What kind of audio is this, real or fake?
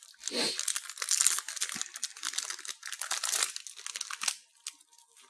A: real